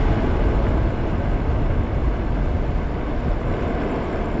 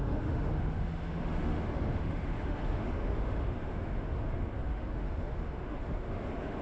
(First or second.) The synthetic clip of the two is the second